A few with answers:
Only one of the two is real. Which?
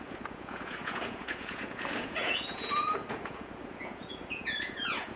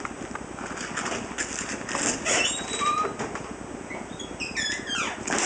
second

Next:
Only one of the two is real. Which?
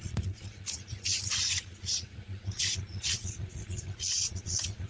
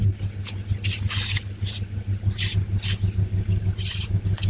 second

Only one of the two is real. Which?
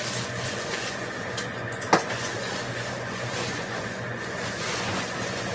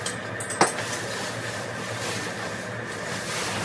second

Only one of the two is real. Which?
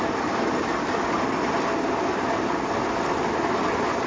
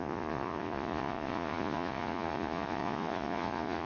first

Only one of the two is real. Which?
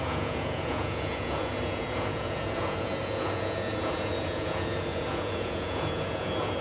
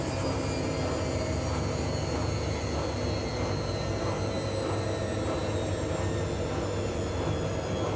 second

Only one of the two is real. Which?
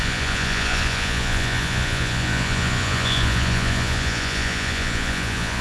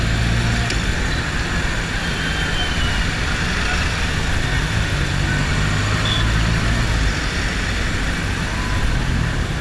second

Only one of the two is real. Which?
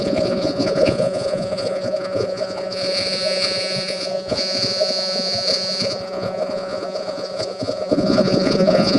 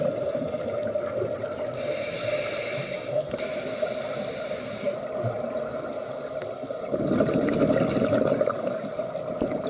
second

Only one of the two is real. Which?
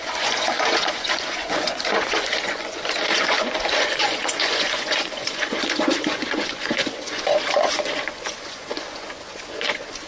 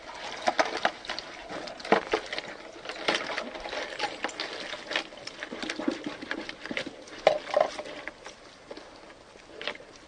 second